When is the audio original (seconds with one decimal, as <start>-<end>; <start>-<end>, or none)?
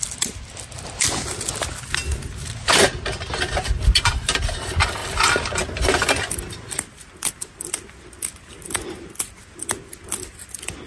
0.0-10.9